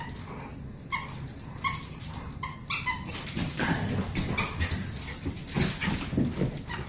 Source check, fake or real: real